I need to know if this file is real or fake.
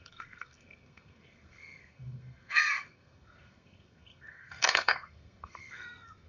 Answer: fake